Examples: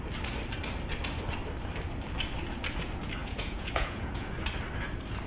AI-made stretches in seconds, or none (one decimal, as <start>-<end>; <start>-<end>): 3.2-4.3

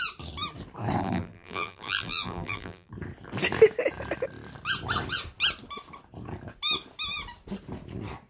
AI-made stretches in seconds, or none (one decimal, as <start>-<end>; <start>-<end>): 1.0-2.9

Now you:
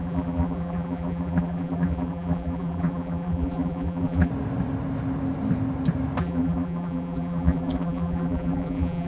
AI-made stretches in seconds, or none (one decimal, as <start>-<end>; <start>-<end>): 0.0-4.3; 6.2-9.1

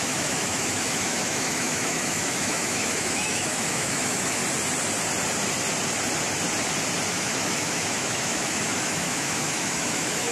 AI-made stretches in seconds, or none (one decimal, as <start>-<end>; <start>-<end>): 0.0-4.4; 7.1-10.3

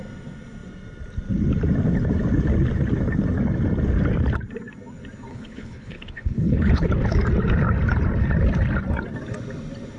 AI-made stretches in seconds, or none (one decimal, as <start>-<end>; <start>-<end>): 5.3-6.9

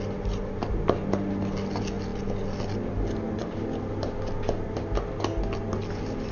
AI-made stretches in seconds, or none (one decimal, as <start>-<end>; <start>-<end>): none

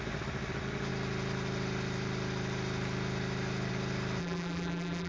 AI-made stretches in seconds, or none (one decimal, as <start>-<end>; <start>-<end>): 4.2-5.1